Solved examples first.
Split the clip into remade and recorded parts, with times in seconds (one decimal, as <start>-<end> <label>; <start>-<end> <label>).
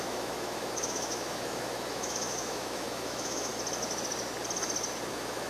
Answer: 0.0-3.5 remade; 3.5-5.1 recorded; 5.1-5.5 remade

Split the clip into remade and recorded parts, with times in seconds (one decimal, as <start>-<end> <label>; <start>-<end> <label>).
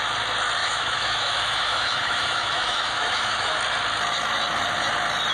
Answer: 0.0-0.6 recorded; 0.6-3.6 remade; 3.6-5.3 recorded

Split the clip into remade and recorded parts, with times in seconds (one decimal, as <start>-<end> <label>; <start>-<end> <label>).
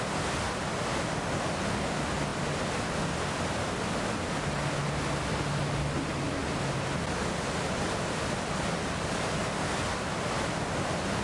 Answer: 0.0-11.2 recorded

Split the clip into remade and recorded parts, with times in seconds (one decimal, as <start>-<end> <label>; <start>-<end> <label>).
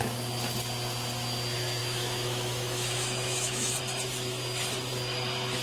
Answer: 0.0-1.8 recorded; 1.8-3.8 remade; 3.8-5.6 recorded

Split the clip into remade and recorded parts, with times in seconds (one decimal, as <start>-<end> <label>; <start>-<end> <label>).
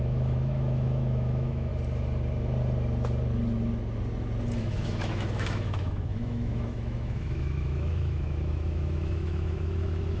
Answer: 0.0-1.7 remade; 1.7-4.6 recorded; 4.6-10.2 remade